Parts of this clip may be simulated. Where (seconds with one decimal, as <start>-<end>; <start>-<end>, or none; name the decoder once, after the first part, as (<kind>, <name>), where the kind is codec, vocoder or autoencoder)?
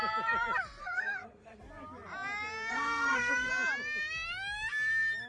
0.8-1.6 (codec, SNAC); 2.7-3.5